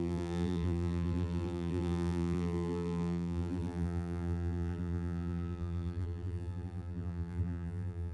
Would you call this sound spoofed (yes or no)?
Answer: yes